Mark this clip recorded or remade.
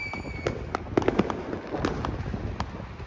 recorded